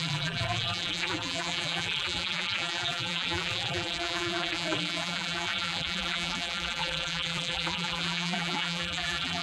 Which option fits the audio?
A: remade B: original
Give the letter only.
A